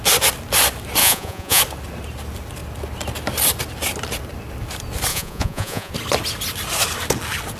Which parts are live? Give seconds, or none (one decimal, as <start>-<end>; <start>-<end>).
0.0-1.0; 1.6-5.1; 5.9-7.6